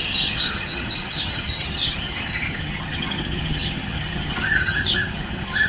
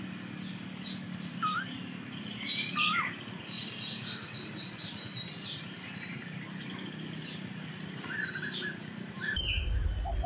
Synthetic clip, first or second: first